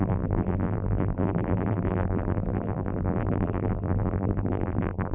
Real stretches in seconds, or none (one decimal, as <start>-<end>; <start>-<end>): none

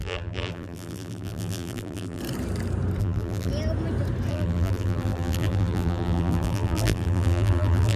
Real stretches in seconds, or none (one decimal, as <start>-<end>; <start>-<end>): 2.2-3.0; 3.5-4.3